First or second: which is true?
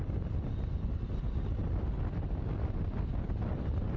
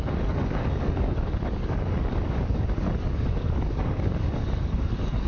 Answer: first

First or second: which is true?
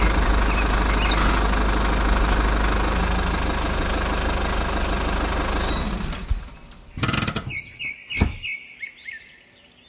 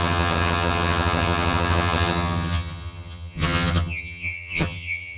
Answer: first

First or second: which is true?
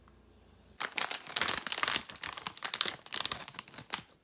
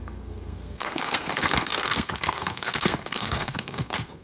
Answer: first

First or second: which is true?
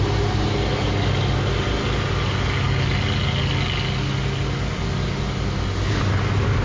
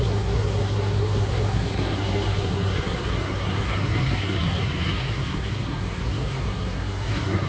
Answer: first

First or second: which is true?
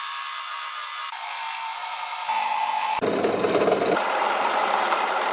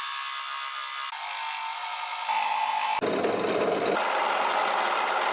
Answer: second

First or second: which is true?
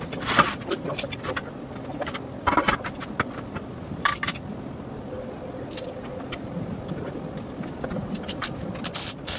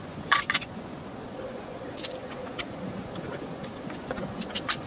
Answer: first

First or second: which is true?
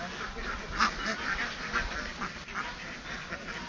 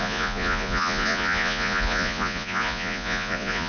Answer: first